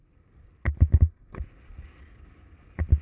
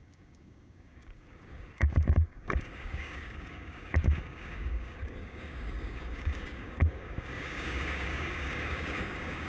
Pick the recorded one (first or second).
first